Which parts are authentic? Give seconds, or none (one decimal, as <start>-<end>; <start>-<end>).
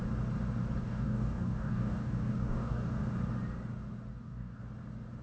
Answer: 0.0-0.8; 3.0-4.1; 4.6-5.2